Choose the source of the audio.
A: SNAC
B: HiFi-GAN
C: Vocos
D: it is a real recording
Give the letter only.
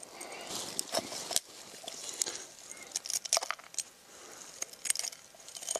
D